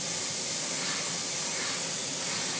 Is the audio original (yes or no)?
yes